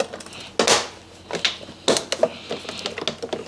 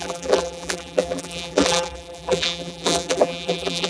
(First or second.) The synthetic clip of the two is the second